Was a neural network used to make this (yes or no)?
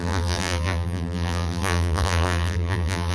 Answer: yes